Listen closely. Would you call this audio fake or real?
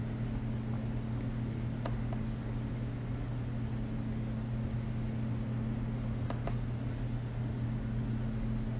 real